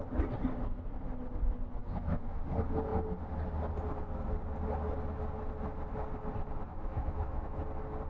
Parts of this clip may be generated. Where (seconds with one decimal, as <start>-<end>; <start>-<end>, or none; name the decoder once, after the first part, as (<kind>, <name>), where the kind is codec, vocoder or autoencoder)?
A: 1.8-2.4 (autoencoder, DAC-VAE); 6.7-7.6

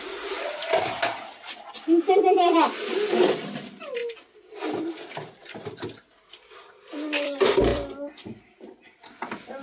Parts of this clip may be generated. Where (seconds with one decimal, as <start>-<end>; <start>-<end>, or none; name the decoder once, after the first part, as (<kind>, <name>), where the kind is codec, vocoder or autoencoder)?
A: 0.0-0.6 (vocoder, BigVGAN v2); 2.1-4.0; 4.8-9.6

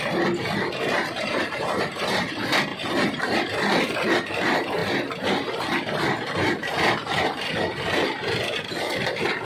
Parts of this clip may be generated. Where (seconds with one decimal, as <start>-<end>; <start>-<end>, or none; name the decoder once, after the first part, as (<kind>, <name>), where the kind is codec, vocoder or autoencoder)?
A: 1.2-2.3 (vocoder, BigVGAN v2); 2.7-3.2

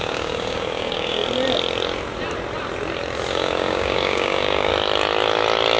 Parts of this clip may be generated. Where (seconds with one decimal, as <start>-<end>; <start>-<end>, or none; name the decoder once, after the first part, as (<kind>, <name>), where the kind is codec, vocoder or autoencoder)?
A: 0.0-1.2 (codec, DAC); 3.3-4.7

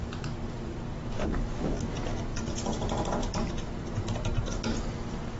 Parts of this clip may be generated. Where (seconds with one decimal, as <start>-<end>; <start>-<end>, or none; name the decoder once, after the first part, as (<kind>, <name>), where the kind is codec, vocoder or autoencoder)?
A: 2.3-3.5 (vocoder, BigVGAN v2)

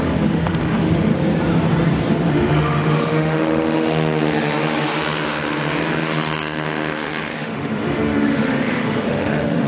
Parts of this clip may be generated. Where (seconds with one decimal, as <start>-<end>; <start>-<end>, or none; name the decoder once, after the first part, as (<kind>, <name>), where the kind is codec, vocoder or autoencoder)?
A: 0.0-1.1 (autoencoder, DAC-VAE); 2.3-5.0; 6.0-9.7

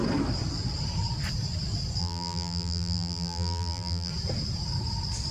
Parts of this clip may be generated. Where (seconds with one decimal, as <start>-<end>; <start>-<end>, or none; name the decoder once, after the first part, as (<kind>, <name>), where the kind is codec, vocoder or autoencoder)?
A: 2.0-4.1 (vocoder, BigVGAN v2)